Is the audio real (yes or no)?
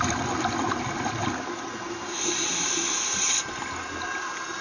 yes